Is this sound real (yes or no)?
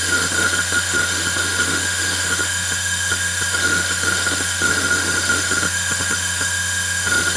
no